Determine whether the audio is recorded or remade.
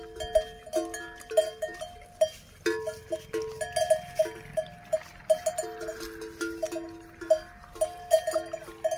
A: recorded